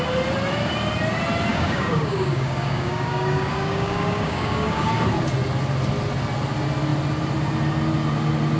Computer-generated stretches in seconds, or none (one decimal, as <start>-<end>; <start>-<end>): 1.5-4.9